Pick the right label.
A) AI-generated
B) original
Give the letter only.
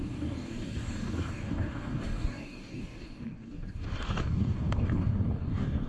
A